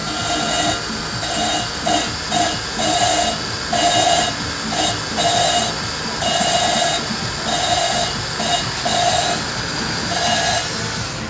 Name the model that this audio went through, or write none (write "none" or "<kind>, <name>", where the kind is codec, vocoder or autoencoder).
none